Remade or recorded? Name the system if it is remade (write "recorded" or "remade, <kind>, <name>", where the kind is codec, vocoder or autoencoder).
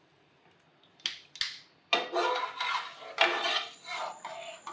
recorded